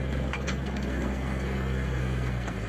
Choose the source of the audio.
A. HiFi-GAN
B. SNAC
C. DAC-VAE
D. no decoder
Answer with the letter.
B